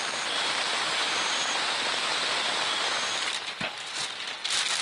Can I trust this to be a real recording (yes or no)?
yes